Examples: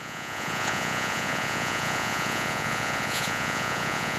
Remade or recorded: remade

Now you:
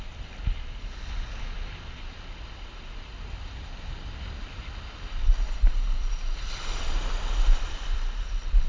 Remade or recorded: recorded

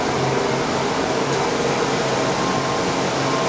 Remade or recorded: recorded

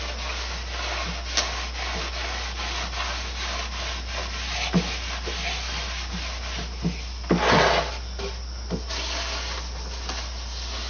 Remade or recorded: recorded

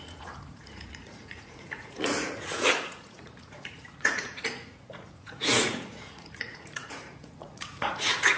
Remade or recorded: remade